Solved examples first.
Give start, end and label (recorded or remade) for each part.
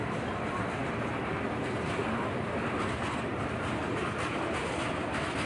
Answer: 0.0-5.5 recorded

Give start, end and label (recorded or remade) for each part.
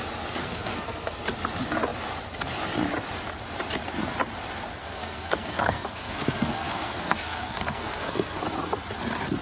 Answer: 0.0-0.4 recorded; 0.4-1.2 remade; 1.2-4.8 recorded; 4.8-8.4 remade; 8.4-9.4 recorded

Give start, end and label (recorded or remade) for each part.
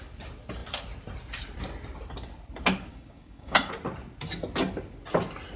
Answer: 0.0-2.9 recorded; 2.9-3.7 remade; 3.7-5.6 recorded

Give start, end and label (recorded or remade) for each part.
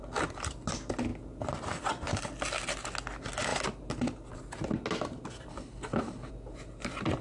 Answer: 0.0-5.5 recorded; 5.5-6.3 remade; 6.3-7.2 recorded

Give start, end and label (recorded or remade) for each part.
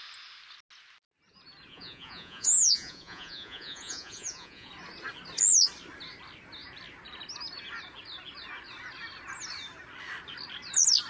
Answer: 0.0-1.7 recorded; 1.7-4.7 remade; 4.7-11.1 recorded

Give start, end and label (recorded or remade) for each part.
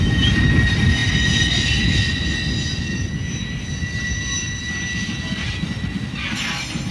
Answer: 0.0-1.0 recorded; 1.0-2.3 remade; 2.3-6.9 recorded